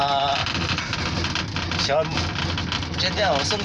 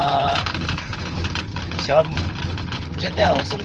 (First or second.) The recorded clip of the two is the first